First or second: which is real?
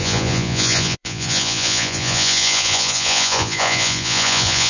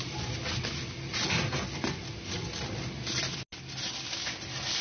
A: second